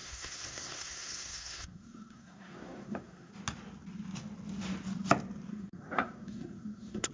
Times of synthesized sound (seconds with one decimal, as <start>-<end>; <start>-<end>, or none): 0.0-3.3; 5.5-7.1

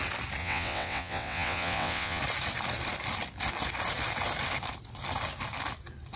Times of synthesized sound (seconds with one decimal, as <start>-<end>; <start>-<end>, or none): 0.4-2.2

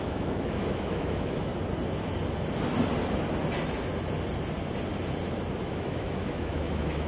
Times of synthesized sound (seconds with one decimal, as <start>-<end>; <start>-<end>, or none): 0.0-1.5; 5.6-7.1

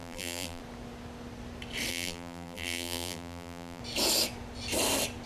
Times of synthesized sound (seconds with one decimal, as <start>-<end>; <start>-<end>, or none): 0.0-0.6; 1.9-3.8

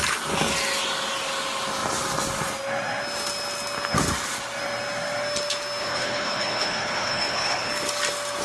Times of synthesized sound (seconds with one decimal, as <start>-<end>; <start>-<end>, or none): 5.8-7.7

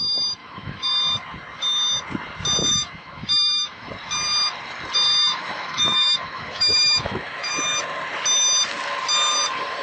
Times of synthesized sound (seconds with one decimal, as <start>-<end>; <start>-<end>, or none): 0.4-0.9; 2.7-3.9; 5.2-7.5

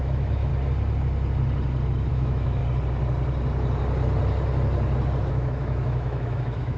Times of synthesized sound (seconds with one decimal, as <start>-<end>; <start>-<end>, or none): 0.0-0.5; 2.1-2.6; 5.3-6.8